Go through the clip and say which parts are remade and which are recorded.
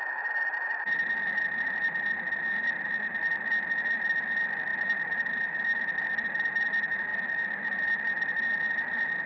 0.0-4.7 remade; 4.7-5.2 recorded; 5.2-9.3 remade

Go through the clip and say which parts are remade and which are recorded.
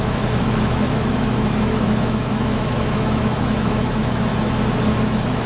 0.0-4.3 remade; 4.3-5.0 recorded; 5.0-5.5 remade